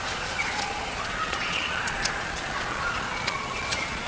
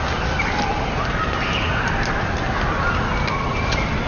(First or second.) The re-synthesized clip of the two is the first